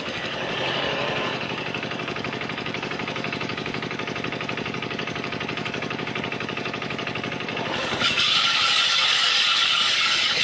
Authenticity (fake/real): fake